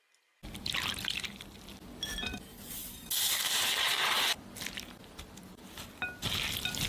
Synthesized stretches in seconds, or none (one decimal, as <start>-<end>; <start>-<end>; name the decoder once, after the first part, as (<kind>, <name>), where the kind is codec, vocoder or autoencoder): none